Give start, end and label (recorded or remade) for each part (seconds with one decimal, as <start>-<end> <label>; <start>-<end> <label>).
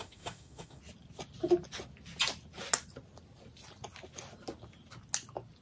0.0-0.8 remade; 0.8-5.6 recorded